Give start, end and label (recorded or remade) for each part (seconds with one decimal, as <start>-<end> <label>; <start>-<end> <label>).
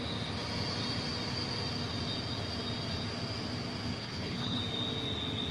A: 0.0-4.0 recorded; 4.0-4.6 remade; 4.6-5.5 recorded